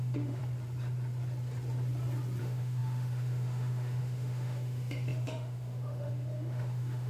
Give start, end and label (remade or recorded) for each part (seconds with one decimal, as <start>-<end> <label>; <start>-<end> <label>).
0.0-0.4 remade; 0.4-2.4 recorded; 2.4-7.1 remade

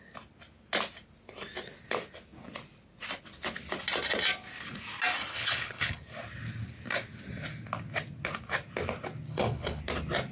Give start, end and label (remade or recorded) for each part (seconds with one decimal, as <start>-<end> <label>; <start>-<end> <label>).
0.0-5.3 recorded; 5.3-6.0 remade; 6.0-9.3 recorded; 9.3-9.8 remade; 9.8-10.3 recorded

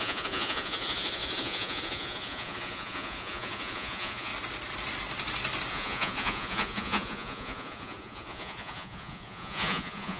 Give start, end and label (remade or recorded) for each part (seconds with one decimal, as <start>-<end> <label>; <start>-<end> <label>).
0.0-4.3 remade; 4.3-5.7 recorded; 5.7-10.2 remade